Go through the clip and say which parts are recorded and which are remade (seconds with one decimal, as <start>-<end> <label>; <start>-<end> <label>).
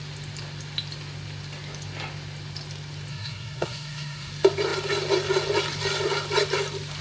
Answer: 0.0-3.1 recorded; 3.1-4.3 remade; 4.3-7.0 recorded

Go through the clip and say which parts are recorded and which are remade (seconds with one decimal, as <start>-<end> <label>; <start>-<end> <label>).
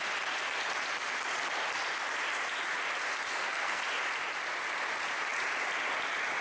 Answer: 0.0-3.3 recorded; 3.3-3.8 remade; 3.8-6.4 recorded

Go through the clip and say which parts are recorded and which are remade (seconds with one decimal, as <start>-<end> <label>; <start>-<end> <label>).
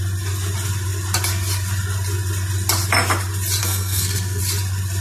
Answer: 0.0-3.6 recorded; 3.6-4.4 remade; 4.4-5.0 recorded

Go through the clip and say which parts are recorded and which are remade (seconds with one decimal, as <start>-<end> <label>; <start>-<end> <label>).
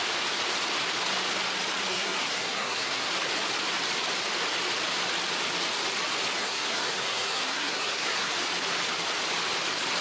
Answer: 0.0-1.9 recorded; 1.9-3.1 remade; 3.1-6.4 recorded; 6.4-8.3 remade; 8.3-10.0 recorded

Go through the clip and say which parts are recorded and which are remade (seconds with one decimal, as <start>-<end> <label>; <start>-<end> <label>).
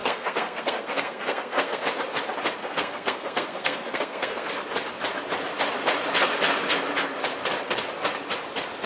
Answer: 0.0-1.8 remade; 1.8-2.6 recorded; 2.6-4.5 remade; 4.5-8.9 recorded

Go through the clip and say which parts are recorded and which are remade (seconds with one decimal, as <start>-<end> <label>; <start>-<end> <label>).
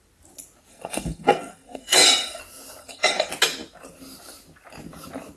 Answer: 0.0-0.7 recorded; 0.7-2.4 remade; 2.4-2.8 recorded; 2.8-3.3 remade; 3.3-5.4 recorded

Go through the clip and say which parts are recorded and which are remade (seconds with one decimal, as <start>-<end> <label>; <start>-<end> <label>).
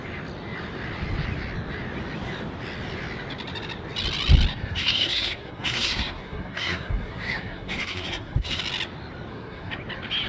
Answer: 0.0-4.5 recorded; 4.5-8.6 remade; 8.6-9.3 recorded; 9.3-9.8 remade; 9.8-10.3 recorded